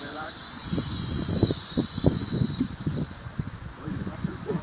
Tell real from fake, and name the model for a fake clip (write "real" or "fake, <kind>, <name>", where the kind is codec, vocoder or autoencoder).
fake, vocoder, Vocos